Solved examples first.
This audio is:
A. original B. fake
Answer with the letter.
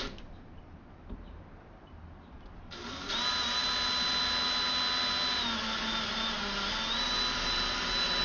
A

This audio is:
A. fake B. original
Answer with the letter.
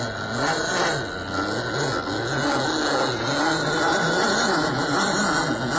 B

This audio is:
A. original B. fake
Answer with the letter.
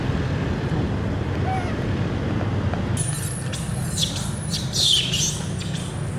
A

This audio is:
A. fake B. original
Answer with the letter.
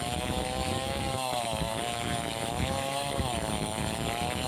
A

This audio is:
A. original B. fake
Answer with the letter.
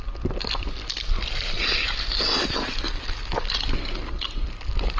A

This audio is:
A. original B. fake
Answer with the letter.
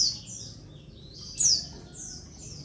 A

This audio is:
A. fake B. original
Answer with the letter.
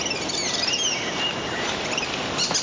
B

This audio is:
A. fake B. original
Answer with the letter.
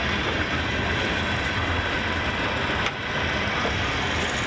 B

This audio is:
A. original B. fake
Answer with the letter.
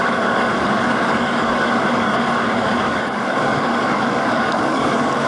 B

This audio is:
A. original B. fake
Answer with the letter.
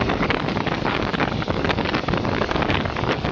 B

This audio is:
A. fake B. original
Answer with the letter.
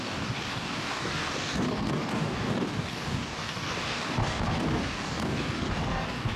A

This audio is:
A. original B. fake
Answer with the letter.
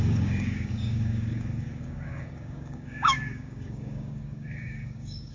B